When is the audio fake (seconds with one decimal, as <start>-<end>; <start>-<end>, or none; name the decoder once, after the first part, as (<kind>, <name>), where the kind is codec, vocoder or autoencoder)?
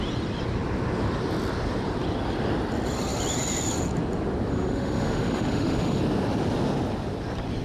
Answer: 4.5-6.0 (autoencoder, DAC-VAE)